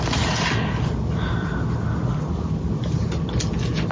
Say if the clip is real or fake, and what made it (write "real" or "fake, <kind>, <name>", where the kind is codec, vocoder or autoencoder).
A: real